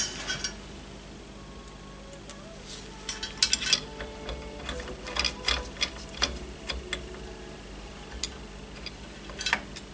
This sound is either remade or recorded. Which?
recorded